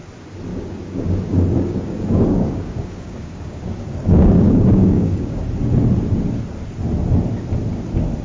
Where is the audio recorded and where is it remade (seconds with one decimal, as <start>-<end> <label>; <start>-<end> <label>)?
0.0-0.5 recorded; 0.5-5.4 remade; 5.4-8.2 recorded